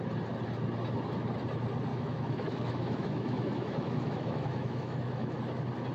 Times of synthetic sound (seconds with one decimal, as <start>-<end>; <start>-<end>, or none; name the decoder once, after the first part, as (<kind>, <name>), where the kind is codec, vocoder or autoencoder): 1.9-5.4 (autoencoder, DAC-VAE)